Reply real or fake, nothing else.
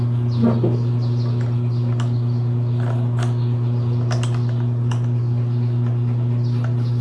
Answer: real